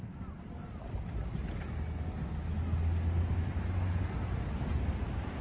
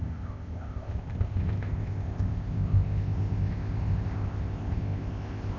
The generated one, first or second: second